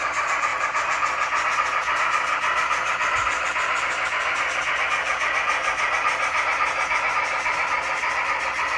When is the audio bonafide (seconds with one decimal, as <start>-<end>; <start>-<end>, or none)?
0.0-8.8